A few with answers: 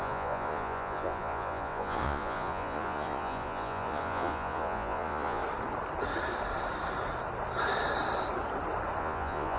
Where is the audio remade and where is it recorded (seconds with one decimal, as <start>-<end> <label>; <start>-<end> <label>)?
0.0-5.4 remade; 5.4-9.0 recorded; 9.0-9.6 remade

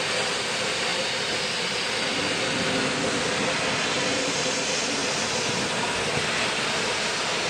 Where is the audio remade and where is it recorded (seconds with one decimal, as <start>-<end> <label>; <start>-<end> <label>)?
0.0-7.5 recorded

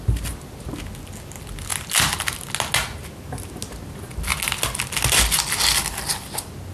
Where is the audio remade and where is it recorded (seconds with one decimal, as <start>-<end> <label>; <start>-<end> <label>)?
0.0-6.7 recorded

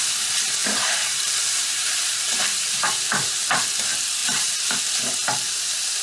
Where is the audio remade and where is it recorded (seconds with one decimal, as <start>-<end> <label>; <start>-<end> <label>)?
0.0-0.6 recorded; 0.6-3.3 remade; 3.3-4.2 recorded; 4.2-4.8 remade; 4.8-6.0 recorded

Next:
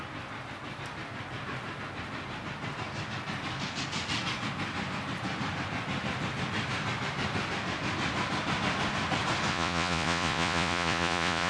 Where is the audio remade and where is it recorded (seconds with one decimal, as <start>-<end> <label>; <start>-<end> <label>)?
0.0-9.5 recorded; 9.5-11.5 remade